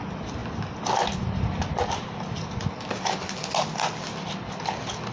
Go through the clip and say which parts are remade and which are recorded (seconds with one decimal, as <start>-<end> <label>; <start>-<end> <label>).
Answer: 0.0-0.4 recorded; 0.4-2.3 remade; 2.3-5.1 recorded